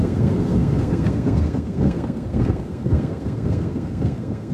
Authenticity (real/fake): fake